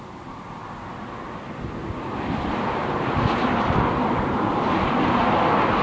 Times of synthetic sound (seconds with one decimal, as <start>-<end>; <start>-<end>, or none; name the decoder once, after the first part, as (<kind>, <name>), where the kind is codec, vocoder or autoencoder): none